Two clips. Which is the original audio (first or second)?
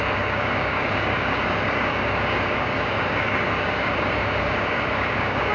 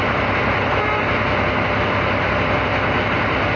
second